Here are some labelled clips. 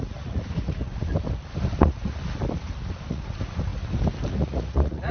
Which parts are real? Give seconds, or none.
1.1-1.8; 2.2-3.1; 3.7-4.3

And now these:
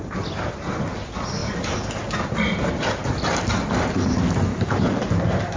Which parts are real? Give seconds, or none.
0.0-5.6

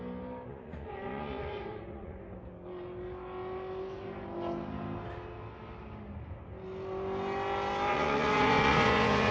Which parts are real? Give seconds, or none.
0.0-0.5; 2.2-7.9